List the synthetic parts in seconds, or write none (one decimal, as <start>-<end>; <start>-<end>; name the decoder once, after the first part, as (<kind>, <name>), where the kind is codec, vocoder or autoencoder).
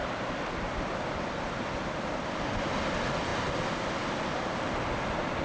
none